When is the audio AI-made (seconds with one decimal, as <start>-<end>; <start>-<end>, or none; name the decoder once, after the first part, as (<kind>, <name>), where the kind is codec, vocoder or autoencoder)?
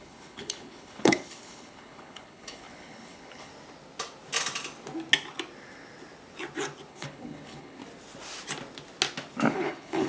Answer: 0.0-3.5 (codec, HILCodec); 6.9-7.8; 9.5-10.1